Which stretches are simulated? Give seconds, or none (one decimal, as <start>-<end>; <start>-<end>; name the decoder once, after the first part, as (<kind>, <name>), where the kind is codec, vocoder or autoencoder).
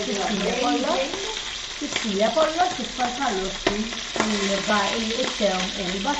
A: none